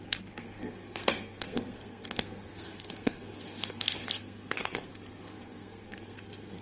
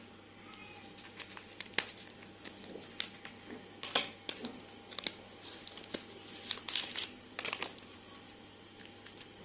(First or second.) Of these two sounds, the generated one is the first